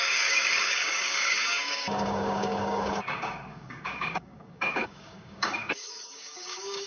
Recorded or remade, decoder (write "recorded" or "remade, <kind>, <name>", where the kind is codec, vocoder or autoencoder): remade, codec, DAC